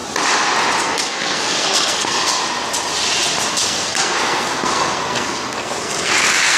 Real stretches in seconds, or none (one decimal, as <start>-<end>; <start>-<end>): 0.0-0.8; 2.4-3.5